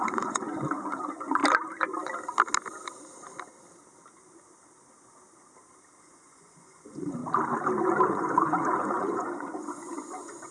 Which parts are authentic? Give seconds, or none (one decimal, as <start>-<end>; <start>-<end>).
1.4-6.0; 7.2-8.1